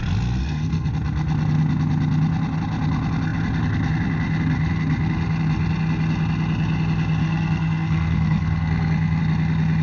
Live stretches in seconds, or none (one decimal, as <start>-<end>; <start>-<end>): 0.0-0.4; 0.9-7.2; 9.2-9.8